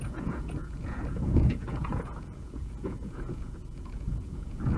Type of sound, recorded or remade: remade